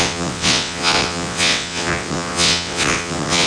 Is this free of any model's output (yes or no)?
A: no